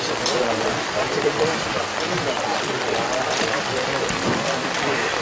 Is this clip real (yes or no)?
yes